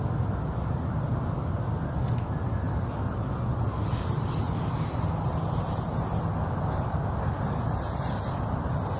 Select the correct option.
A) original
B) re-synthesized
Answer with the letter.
A